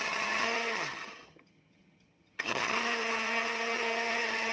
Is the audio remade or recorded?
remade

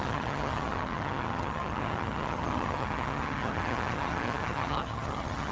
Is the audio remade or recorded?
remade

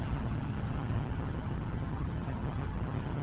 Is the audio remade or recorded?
remade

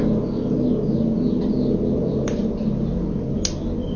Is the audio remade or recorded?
recorded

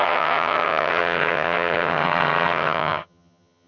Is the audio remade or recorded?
remade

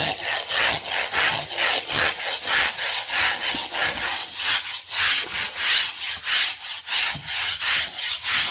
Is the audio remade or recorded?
remade